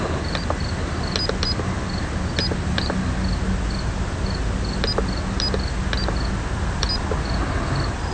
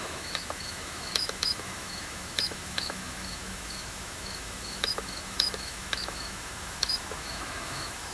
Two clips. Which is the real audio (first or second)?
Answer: first